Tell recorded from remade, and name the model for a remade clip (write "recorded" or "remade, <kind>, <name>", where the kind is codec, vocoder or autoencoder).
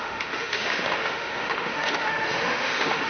remade, autoencoder, DAC-VAE